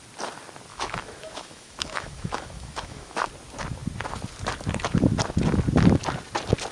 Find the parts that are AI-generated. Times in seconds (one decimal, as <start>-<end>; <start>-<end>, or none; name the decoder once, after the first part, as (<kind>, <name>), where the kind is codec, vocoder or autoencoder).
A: 0.7-3.3 (autoencoder, DAC-VAE)